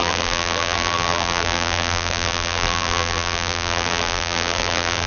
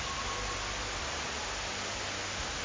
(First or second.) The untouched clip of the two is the second